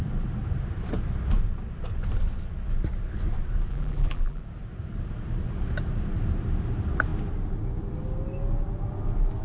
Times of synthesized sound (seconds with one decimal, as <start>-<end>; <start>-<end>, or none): 3.7-4.4